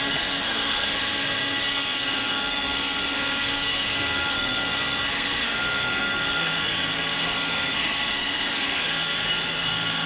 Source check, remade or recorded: remade